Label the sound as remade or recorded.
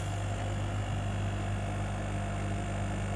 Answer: recorded